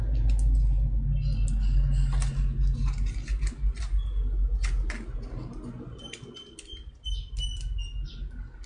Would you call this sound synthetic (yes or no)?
no